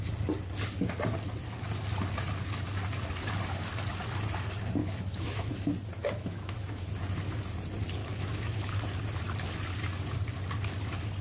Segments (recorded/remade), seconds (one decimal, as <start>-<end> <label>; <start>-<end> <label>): 0.0-4.8 recorded; 4.8-5.5 remade; 5.5-6.0 recorded; 6.0-6.9 remade; 6.9-8.0 recorded; 8.0-8.7 remade; 8.7-11.2 recorded